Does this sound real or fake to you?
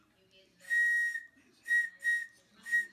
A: real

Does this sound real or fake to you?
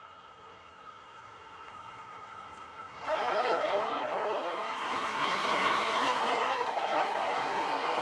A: fake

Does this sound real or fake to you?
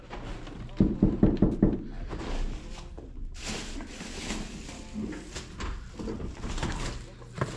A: real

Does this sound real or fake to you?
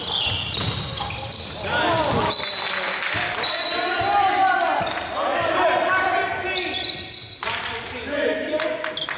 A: real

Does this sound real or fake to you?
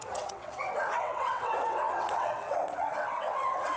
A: fake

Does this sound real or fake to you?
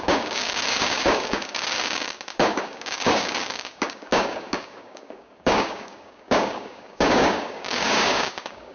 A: fake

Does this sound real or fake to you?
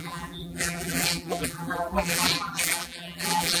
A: fake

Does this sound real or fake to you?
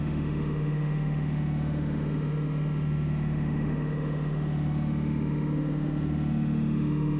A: fake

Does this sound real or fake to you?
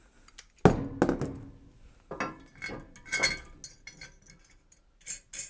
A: real